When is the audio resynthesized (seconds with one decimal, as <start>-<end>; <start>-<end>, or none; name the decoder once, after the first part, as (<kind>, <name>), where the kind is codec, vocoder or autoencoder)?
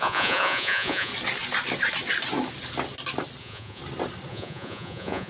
0.0-1.1 (vocoder, Vocos); 3.4-3.8; 4.3-5.3